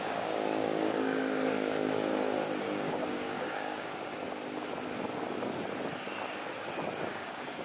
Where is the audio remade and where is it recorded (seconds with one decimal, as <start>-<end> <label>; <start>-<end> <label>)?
0.0-2.1 remade; 2.1-2.6 recorded; 2.6-4.1 remade; 4.1-7.1 recorded; 7.1-7.6 remade